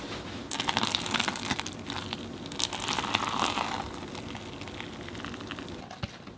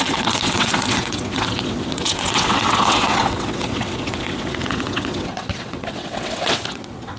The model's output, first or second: second